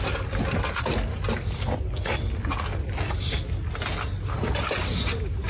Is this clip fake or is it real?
real